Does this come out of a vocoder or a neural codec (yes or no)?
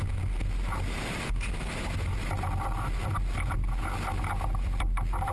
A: no